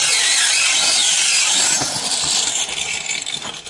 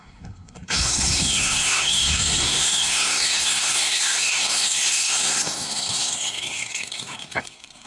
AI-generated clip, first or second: second